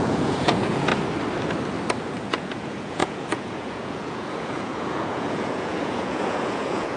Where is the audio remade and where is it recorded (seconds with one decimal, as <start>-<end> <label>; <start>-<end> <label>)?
0.0-0.9 remade; 0.9-2.3 recorded; 2.3-7.0 remade